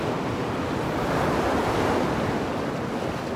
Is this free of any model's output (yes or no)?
yes